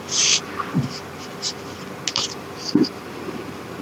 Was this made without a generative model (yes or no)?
yes